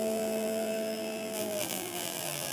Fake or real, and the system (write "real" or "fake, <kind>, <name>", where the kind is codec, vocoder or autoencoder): fake, vocoder, BigVGAN v2